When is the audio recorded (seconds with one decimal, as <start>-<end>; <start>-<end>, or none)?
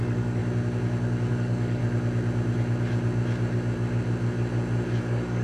0.4-1.3; 1.8-5.0